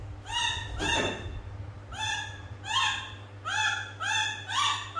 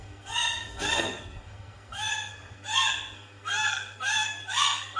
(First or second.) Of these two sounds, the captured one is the first